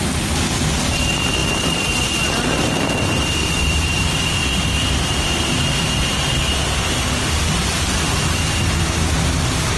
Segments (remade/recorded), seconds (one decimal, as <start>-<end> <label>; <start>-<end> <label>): 0.0-9.8 recorded